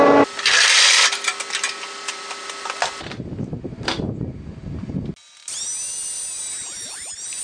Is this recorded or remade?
recorded